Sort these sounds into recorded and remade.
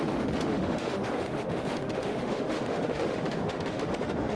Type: remade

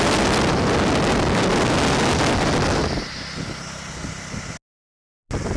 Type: recorded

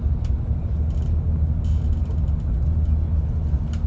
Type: recorded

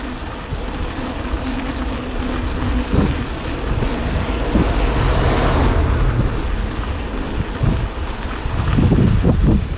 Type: recorded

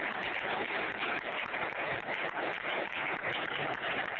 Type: remade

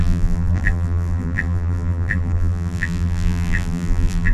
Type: remade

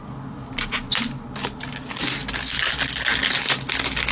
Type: recorded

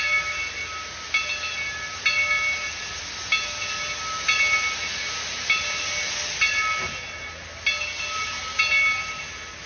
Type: recorded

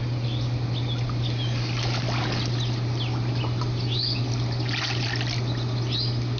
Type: recorded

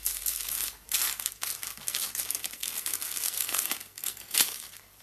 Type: remade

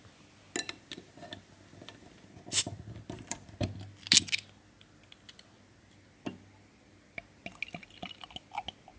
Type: recorded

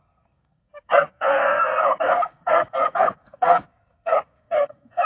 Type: remade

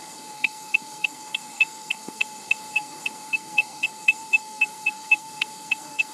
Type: remade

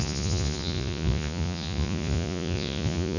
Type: remade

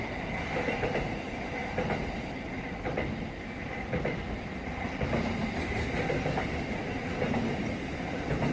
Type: recorded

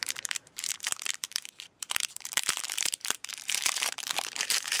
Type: remade